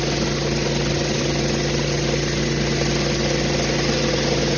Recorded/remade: recorded